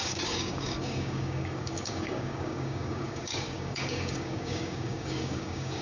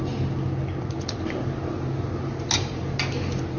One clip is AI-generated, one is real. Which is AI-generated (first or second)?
first